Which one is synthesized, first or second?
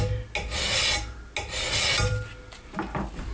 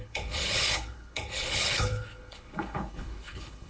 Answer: second